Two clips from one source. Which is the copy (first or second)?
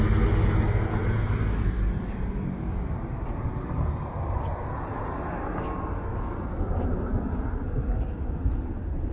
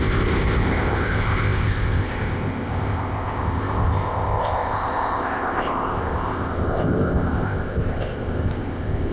second